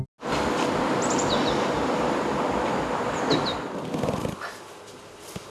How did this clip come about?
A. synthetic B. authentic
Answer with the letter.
B